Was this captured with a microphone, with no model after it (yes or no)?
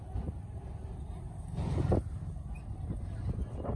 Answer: yes